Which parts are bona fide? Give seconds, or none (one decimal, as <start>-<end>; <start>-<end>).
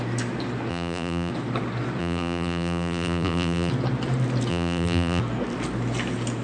0.0-0.7; 1.3-2.0; 3.7-4.5; 5.2-6.4